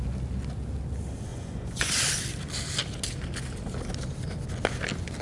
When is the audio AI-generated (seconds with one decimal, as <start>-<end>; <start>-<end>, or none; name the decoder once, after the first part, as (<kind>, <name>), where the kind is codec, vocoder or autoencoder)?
1.3-1.9 (vocoder, Vocos)